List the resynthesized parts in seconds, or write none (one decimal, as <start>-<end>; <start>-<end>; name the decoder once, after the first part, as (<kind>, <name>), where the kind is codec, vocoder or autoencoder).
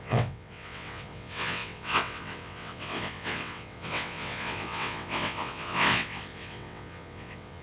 0.0-7.6 (vocoder, WaveNeXt)